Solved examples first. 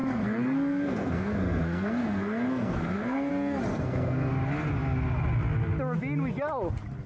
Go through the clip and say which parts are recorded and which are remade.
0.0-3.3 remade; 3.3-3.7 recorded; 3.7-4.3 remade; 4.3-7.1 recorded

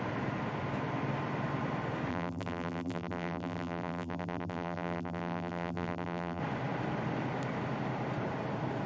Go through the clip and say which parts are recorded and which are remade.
0.0-2.1 recorded; 2.1-6.4 remade; 6.4-8.9 recorded

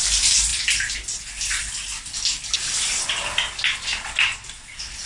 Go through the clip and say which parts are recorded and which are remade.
0.0-5.1 recorded

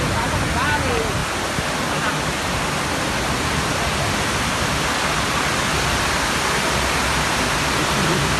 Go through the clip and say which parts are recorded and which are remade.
0.0-8.4 recorded

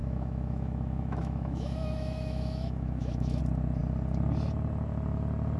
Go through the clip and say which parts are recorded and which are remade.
0.0-3.4 remade; 3.4-5.6 recorded